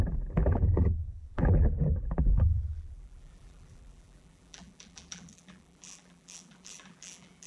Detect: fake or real fake